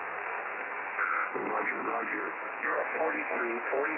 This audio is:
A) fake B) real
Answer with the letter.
A